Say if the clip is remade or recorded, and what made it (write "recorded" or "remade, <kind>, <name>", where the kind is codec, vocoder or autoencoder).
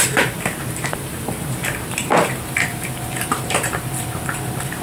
remade, vocoder, BigVGAN v2